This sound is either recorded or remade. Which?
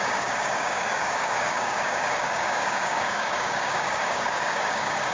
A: remade